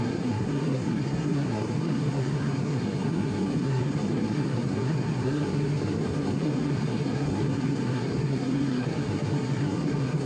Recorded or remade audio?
remade